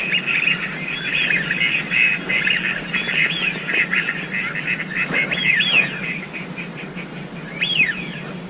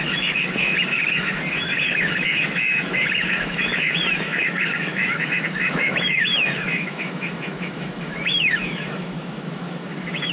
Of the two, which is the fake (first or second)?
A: second